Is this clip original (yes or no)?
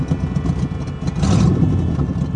yes